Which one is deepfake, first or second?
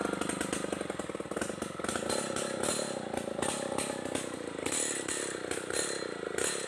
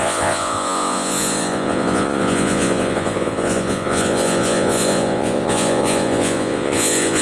second